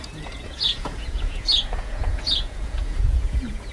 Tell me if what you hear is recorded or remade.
remade